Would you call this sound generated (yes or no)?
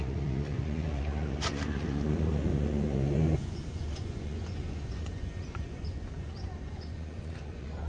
yes